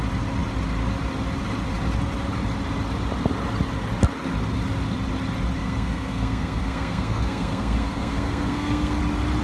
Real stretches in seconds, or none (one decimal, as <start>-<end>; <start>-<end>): 0.0-5.6; 9.0-9.4